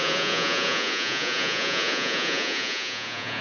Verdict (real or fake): fake